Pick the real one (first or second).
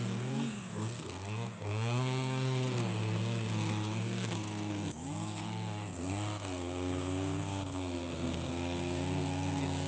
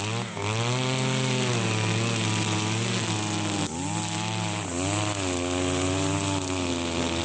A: second